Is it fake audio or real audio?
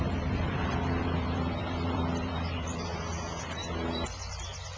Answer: fake